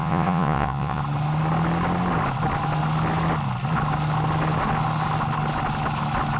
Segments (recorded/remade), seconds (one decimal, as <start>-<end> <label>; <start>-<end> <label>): 0.0-1.0 remade; 1.0-6.4 recorded